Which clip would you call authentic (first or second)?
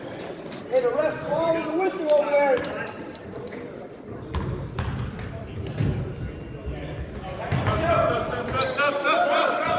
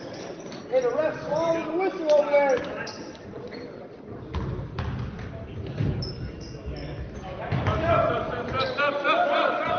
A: second